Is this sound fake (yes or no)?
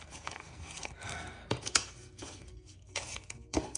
yes